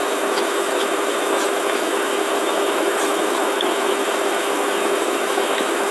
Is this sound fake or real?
fake